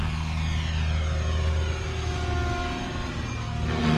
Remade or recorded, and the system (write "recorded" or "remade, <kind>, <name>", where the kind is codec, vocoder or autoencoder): recorded